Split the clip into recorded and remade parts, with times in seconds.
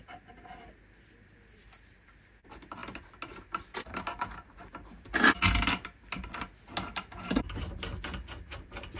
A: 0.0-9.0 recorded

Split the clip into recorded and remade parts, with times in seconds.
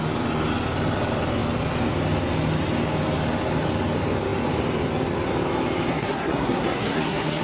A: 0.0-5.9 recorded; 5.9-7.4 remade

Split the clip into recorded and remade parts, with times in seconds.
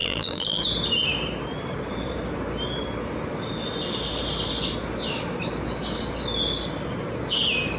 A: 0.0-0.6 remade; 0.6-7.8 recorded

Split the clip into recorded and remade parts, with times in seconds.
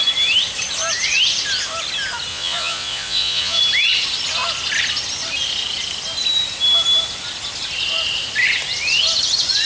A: 0.0-2.3 recorded; 2.3-3.6 remade; 3.6-9.7 recorded